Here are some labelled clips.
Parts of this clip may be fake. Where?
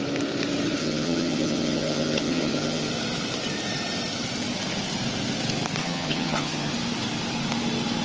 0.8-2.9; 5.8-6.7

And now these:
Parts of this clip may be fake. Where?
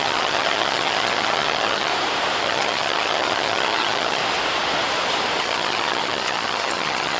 0.0-1.9; 2.4-4.2; 5.4-7.2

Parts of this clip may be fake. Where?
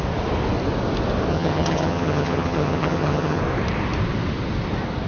1.3-3.4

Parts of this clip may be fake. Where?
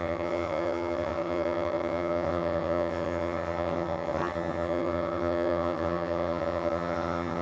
0.0-7.4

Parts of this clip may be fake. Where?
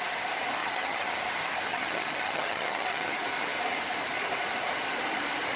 0.6-1.1; 1.7-3.1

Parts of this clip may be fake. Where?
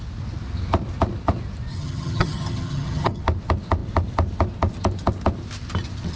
1.7-3.2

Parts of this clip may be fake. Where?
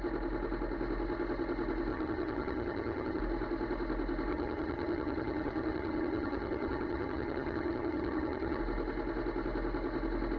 1.9-3.2; 4.3-8.6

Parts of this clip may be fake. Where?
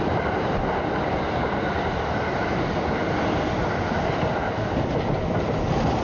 none